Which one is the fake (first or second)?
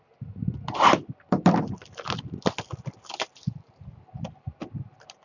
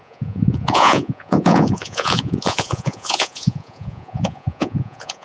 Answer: second